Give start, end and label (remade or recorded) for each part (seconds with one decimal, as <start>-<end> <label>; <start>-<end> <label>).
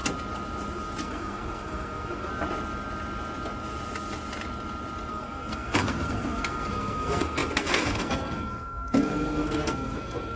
0.0-1.0 recorded; 1.0-2.3 remade; 2.3-5.1 recorded; 5.1-10.4 remade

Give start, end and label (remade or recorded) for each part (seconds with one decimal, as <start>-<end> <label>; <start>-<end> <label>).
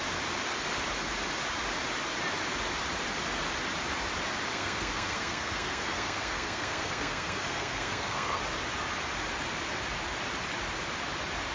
0.0-4.5 recorded; 4.5-8.4 remade; 8.4-11.5 recorded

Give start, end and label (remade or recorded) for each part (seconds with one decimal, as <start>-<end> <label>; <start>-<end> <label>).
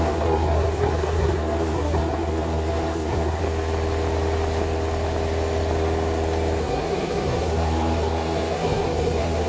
0.0-3.4 remade; 3.4-6.6 recorded; 6.6-9.5 remade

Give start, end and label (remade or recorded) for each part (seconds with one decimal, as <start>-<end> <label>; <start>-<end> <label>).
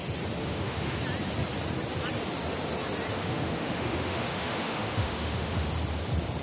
0.0-0.4 recorded; 0.4-1.0 remade; 1.0-3.1 recorded; 3.1-5.7 remade; 5.7-6.4 recorded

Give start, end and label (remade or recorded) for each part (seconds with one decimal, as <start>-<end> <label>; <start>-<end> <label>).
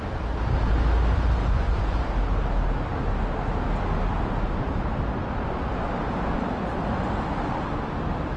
0.0-1.4 recorded; 1.4-2.0 remade; 2.0-8.4 recorded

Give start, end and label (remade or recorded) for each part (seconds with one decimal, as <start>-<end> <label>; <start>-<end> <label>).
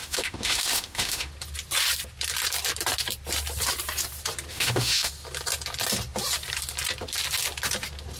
0.0-1.3 remade; 1.3-4.5 recorded; 4.5-5.1 remade; 5.1-8.2 recorded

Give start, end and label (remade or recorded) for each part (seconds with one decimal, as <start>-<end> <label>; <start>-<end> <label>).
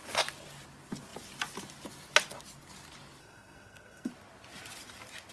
0.0-3.2 recorded; 3.2-4.1 remade; 4.1-5.3 recorded